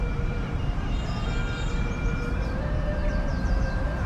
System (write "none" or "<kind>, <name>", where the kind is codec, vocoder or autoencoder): vocoder, BigVGAN v2